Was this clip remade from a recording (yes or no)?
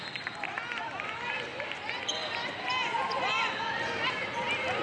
no